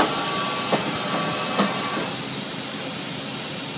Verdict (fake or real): real